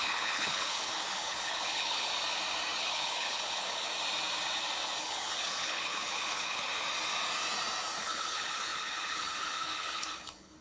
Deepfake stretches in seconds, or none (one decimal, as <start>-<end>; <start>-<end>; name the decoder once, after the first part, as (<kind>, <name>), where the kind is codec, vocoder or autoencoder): 0.0-2.1 (codec, HILCodec); 2.8-3.9; 5.0-6.7; 8.0-10.6